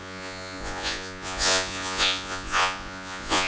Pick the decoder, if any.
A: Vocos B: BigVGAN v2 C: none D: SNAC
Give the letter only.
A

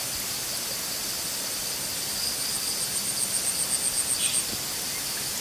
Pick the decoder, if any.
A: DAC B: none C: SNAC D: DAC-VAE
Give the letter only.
B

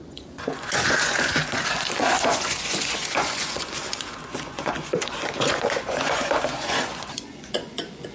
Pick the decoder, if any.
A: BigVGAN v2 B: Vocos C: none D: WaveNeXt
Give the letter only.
B